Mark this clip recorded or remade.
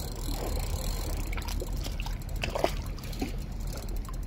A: remade